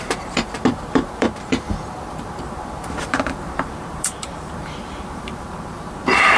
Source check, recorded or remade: remade